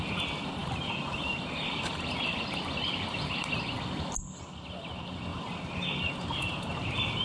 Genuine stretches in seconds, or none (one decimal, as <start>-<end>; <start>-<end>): 0.0-7.2